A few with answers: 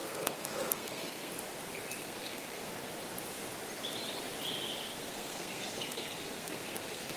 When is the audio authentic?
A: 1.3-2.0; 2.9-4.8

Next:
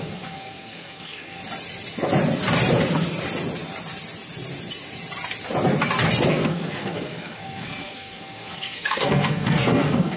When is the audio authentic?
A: 1.4-6.3

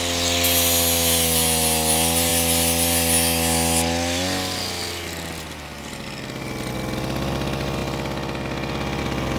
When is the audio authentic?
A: 0.0-9.4

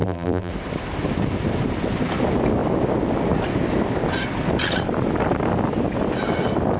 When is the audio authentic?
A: 0.5-6.8

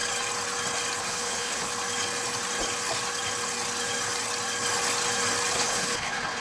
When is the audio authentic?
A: 0.0-1.0; 1.7-5.5

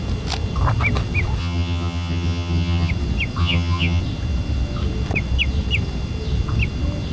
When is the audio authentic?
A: 0.0-1.4; 2.9-3.4; 4.0-7.1